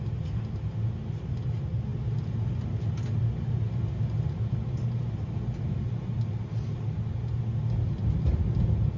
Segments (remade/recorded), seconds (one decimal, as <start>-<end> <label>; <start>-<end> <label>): 0.0-9.0 recorded